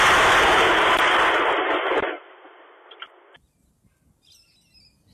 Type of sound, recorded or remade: recorded